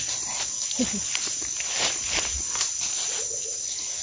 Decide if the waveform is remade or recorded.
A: recorded